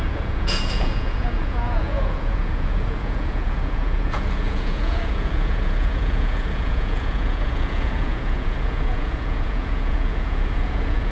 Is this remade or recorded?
remade